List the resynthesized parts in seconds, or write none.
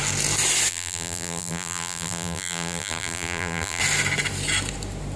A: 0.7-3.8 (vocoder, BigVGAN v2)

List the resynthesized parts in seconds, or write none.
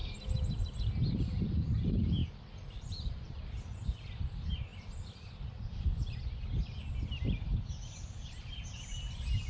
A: 1.1-2.2 (vocoder, BigVGAN v2); 2.7-4.7; 8.3-9.5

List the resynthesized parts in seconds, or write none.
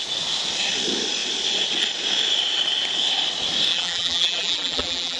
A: 3.7-5.2 (vocoder, BigVGAN v2)